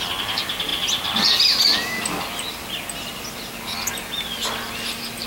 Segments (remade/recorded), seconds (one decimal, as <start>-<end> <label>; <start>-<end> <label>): 0.0-5.3 recorded